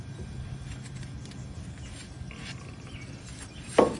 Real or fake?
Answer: real